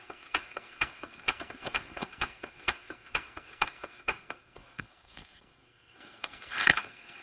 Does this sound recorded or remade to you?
remade